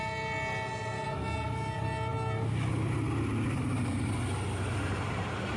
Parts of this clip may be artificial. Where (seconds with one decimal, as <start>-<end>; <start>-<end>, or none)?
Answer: none